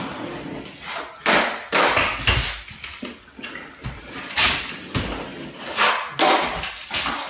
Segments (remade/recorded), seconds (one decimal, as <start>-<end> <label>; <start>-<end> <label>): 0.0-7.3 recorded